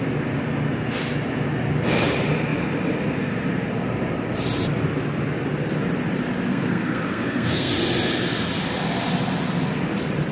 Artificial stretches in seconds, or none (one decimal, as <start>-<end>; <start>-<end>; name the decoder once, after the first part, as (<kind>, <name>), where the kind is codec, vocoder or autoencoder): 6.5-7.7 (codec, SNAC)